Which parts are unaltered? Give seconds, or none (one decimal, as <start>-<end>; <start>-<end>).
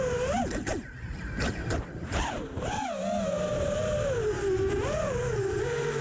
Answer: none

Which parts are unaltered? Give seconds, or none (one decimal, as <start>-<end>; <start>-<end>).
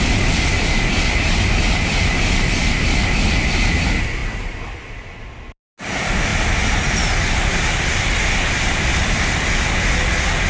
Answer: 0.0-10.5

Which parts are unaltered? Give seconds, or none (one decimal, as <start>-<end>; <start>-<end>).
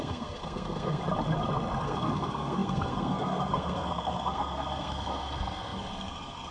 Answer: 1.0-1.8